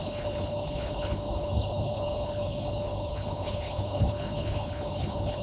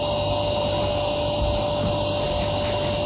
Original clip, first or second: second